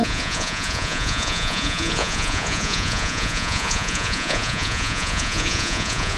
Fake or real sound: fake